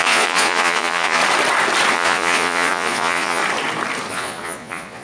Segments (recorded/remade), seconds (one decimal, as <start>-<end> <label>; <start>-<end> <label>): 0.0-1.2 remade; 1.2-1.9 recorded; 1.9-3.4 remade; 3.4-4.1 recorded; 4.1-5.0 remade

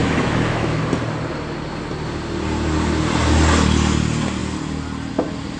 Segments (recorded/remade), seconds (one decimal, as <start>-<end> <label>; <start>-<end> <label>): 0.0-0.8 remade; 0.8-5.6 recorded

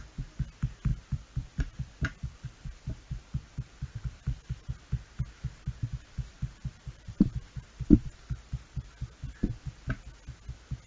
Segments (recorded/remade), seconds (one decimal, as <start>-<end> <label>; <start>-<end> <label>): 0.0-0.9 recorded; 0.9-4.7 remade; 4.7-6.3 recorded; 6.3-8.9 remade; 8.9-10.9 recorded

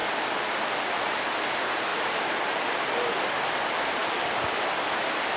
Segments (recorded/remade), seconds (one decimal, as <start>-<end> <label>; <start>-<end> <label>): 0.0-0.5 remade; 0.5-5.4 recorded